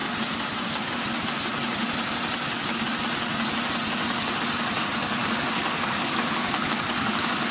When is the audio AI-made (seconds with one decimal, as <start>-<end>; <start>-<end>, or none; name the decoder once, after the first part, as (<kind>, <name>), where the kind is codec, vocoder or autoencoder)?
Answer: 5.2-7.5 (codec, DAC)